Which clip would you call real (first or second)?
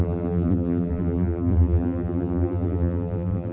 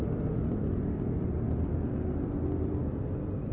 second